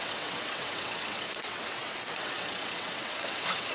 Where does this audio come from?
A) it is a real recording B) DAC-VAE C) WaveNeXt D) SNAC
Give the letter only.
C